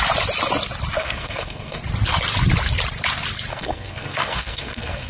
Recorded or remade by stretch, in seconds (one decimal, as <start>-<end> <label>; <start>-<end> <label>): 0.0-1.0 recorded; 1.0-1.8 remade; 1.8-3.5 recorded; 3.5-5.1 remade